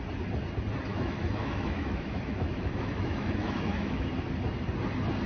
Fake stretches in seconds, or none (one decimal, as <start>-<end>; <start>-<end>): 0.9-4.1

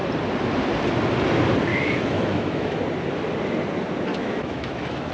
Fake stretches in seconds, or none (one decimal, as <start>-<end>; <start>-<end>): 1.7-2.8; 4.1-5.1